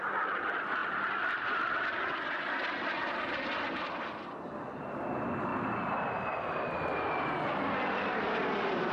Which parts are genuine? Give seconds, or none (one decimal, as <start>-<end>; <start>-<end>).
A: 0.0-8.9